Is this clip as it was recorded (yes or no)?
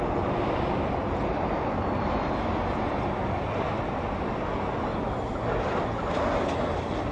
yes